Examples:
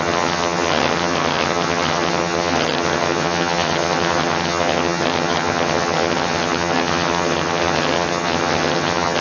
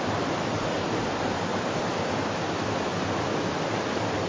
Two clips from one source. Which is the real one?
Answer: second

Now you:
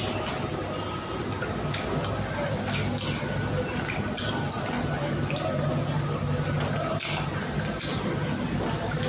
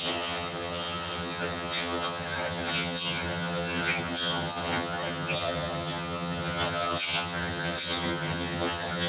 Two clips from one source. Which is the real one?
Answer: first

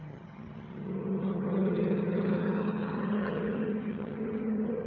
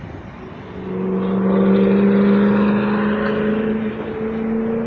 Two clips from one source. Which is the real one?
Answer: second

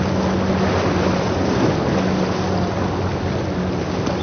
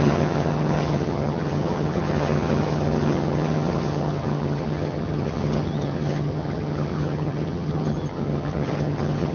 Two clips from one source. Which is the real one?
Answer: first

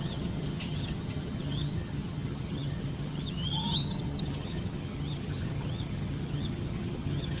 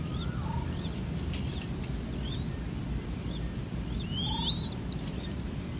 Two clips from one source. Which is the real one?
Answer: second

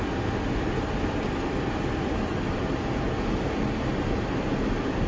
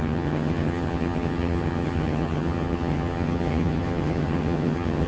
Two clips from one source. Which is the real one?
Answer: first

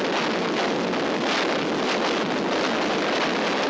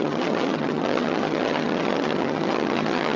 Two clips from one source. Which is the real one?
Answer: first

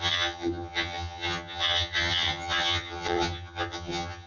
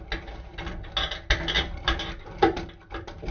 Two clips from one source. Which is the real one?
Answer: second